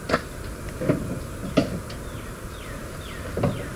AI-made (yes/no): no